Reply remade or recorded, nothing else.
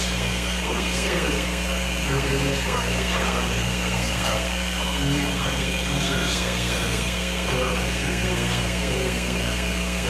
remade